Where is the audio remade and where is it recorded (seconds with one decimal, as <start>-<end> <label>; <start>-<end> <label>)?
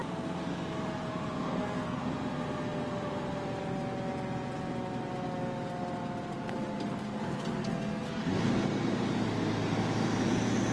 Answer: 0.0-1.4 recorded; 1.4-2.0 remade; 2.0-7.6 recorded; 7.6-8.2 remade; 8.2-10.7 recorded